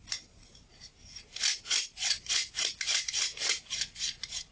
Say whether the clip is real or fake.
real